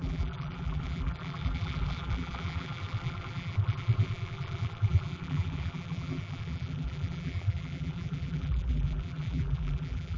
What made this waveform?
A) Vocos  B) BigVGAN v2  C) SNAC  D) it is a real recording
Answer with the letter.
B